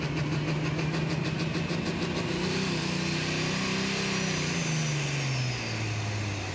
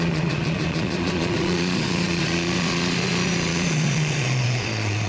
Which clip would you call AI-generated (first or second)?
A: second